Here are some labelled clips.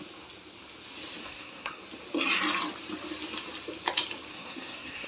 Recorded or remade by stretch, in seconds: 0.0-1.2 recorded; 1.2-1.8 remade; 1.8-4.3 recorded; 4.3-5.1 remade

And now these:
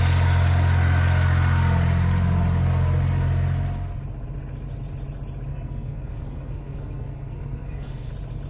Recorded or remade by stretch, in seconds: 0.0-5.5 recorded; 5.5-8.1 remade; 8.1-8.5 recorded

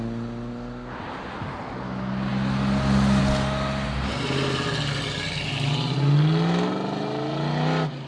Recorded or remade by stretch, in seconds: 0.0-8.1 recorded

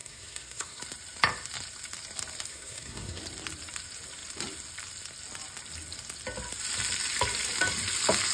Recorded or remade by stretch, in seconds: 0.0-0.8 remade; 0.8-2.5 recorded; 2.5-3.2 remade; 3.2-8.3 recorded

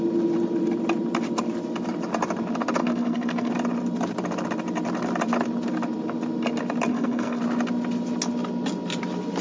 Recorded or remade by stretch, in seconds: 0.0-2.8 recorded; 2.8-3.5 remade; 3.5-6.9 recorded; 6.9-7.4 remade; 7.4-9.4 recorded

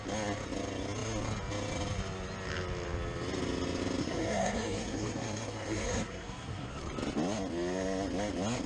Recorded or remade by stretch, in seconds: 0.0-4.0 recorded; 4.0-6.7 remade; 6.7-8.7 recorded

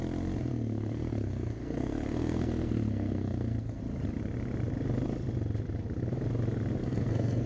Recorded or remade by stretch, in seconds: 0.0-0.5 recorded; 0.5-3.8 remade; 3.8-6.8 recorded; 6.8-7.5 remade